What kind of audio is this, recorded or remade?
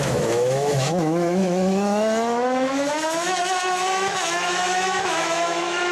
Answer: remade